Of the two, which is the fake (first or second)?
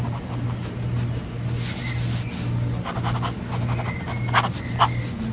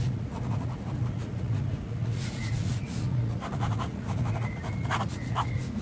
second